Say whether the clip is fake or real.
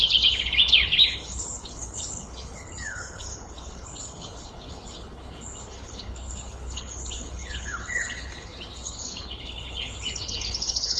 fake